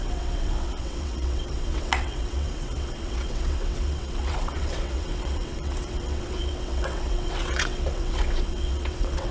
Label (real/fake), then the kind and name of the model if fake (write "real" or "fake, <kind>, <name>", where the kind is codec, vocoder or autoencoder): fake, vocoder, WaveNeXt